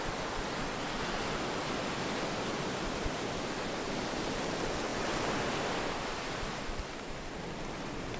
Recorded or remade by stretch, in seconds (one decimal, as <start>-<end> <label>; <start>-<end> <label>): 0.0-4.9 remade; 4.9-6.2 recorded; 6.2-8.2 remade